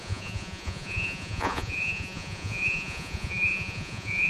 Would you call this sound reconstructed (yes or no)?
yes